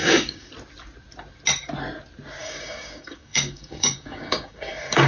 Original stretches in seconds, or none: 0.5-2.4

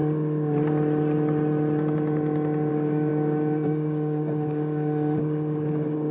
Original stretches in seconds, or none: 0.0-2.7

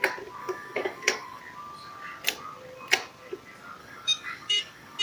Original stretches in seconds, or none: 0.0-0.4; 1.4-3.8

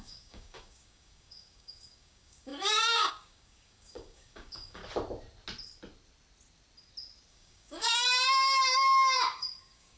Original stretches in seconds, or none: 4.8-7.3

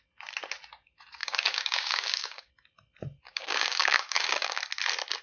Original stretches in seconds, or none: 0.0-1.2; 2.5-3.3; 4.6-5.2

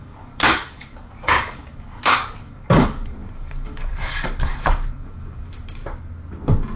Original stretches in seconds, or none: 5.8-6.8